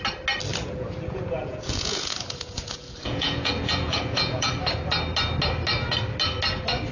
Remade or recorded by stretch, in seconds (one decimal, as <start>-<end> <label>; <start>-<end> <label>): 0.0-0.5 recorded; 0.5-4.5 remade; 4.5-6.9 recorded